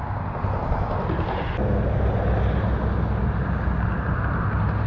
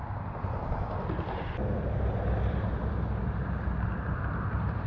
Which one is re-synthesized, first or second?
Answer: second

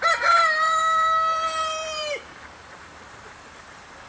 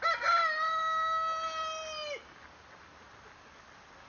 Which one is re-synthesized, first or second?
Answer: first